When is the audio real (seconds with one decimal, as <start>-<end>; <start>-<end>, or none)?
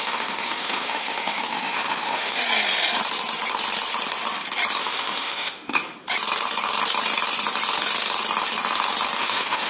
2.4-4.8; 5.8-9.2